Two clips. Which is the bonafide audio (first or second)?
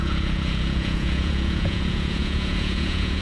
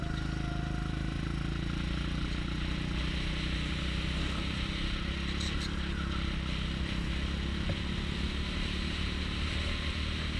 second